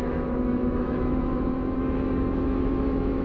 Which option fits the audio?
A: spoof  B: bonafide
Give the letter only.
A